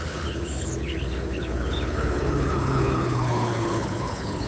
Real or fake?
fake